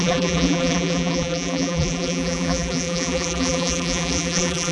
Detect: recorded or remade remade